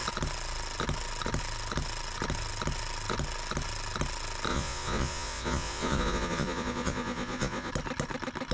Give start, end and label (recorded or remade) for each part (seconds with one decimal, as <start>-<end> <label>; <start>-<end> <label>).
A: 0.0-4.5 recorded; 4.5-7.7 remade; 7.7-8.5 recorded